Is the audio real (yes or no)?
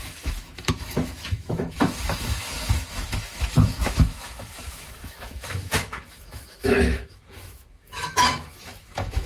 no